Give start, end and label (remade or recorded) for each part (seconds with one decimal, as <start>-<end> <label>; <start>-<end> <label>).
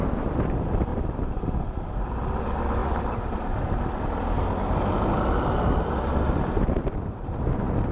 0.0-0.9 recorded; 0.9-2.1 remade; 2.1-7.9 recorded